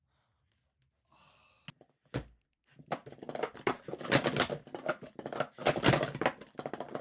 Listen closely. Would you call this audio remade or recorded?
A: recorded